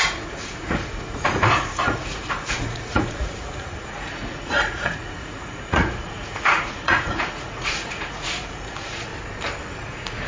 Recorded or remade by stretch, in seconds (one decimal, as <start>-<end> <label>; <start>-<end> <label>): 0.0-9.1 remade; 9.1-9.7 recorded; 9.7-10.3 remade